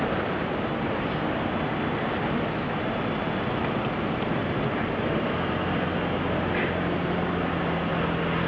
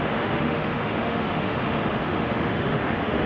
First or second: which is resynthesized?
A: second